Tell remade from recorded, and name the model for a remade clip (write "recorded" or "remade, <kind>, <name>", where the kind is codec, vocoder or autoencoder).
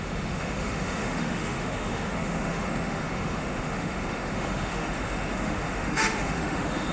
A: remade, autoencoder, DAC-VAE